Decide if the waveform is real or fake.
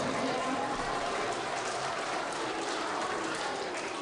fake